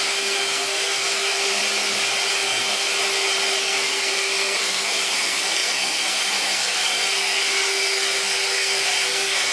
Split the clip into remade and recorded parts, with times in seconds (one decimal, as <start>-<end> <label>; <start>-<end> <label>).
0.0-1.6 remade; 1.6-2.3 recorded; 2.3-2.9 remade; 2.9-3.6 recorded; 3.6-9.5 remade